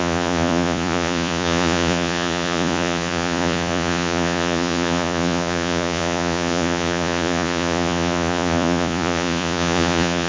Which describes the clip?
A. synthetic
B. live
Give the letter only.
A